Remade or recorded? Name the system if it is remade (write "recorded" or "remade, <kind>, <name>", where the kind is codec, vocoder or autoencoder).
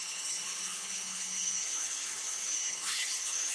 remade, codec, HILCodec